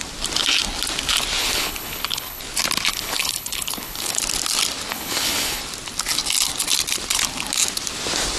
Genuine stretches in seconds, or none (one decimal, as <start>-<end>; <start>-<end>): 0.0-1.4; 2.4-2.9; 4.2-4.9; 5.6-8.4